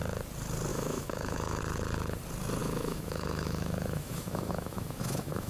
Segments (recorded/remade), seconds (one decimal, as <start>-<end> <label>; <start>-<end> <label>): 0.0-0.7 recorded; 0.7-1.6 remade; 1.6-2.6 recorded; 2.6-5.5 remade